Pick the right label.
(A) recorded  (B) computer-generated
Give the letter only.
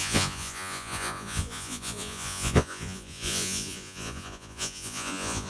B